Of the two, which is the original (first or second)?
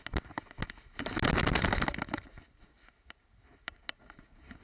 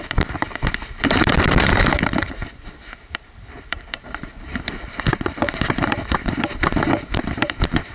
first